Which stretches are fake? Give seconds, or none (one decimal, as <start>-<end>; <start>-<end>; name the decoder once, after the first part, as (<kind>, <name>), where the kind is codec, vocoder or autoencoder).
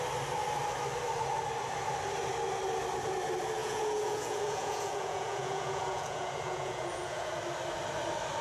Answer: 3.6-7.3 (vocoder, Vocos)